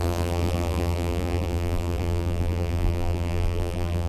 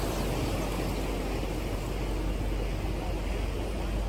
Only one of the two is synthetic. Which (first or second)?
first